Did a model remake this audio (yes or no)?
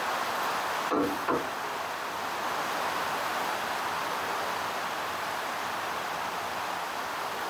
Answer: no